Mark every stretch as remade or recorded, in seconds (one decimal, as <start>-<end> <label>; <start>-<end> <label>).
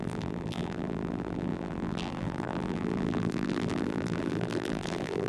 0.0-5.3 remade